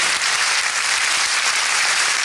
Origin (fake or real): fake